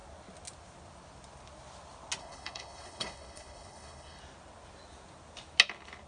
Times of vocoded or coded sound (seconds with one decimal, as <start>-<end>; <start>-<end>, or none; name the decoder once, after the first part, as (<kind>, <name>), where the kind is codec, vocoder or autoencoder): 2.2-4.2 (codec, HILCodec)